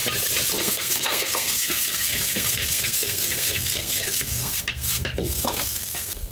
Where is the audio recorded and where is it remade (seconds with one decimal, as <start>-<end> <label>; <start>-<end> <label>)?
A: 0.0-0.6 recorded; 0.6-6.3 remade